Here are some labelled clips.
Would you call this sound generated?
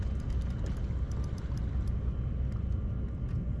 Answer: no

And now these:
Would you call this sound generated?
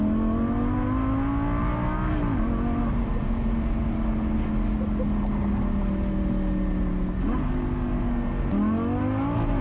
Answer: no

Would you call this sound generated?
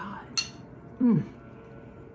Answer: no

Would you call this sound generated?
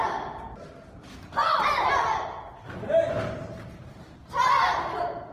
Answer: no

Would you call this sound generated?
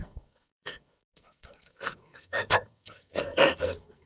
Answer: yes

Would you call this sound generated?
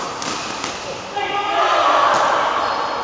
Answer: no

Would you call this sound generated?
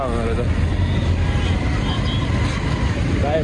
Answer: no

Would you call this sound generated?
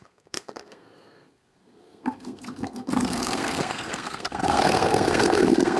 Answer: yes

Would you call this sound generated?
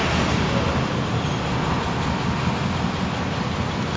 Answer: no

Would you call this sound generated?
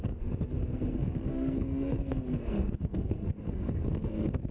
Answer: yes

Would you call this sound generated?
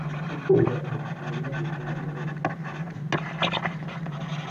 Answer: no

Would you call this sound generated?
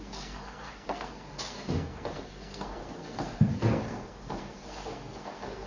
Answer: yes